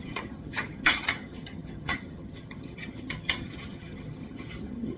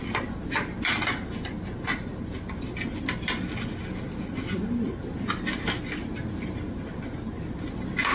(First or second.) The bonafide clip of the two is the second